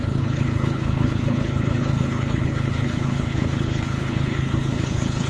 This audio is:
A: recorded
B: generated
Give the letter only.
B